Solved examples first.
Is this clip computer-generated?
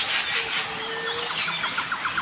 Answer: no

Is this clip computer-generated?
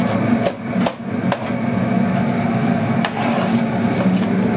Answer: no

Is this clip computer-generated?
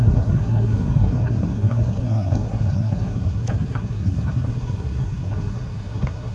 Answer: yes